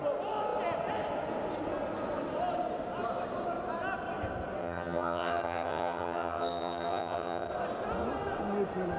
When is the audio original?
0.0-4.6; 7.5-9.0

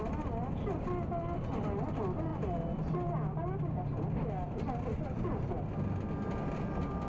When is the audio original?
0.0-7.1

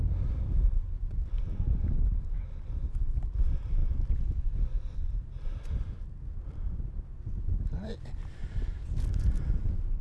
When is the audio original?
0.0-10.0